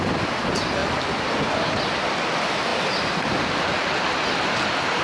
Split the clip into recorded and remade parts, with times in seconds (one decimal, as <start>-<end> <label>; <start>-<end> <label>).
0.0-5.0 recorded